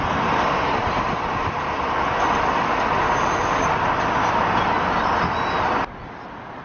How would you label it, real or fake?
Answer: real